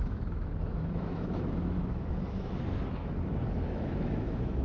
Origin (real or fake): fake